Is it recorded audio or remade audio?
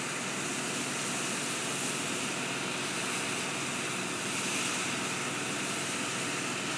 recorded